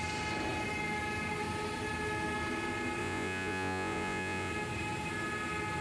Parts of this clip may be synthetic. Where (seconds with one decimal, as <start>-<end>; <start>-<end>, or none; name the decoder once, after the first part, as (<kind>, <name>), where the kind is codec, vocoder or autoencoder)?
3.0-4.5 (vocoder, Vocos)